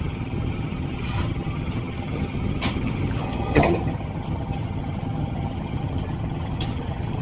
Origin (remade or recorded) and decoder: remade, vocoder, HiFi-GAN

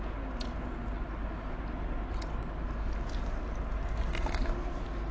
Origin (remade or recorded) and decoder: recorded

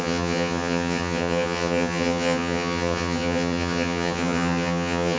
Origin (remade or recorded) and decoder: remade, vocoder, HiFi-GAN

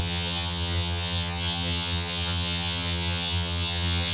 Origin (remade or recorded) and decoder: remade, vocoder, HiFi-GAN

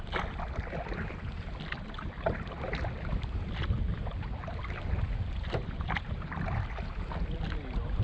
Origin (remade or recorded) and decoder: recorded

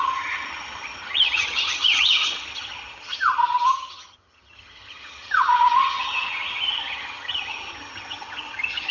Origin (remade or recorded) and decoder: remade, vocoder, HiFi-GAN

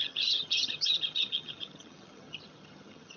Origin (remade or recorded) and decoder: remade, vocoder, HiFi-GAN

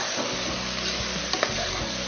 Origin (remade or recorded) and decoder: recorded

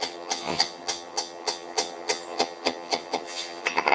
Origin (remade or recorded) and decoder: remade, vocoder, HiFi-GAN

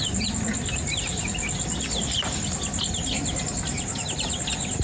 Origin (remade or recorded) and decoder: recorded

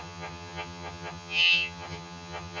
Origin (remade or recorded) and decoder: remade, vocoder, HiFi-GAN